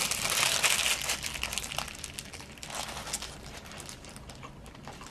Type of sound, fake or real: real